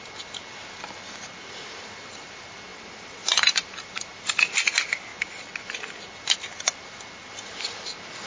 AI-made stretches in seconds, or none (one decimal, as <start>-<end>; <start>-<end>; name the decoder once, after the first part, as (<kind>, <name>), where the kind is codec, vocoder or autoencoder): 2.7-4.5 (vocoder, BigVGAN v2)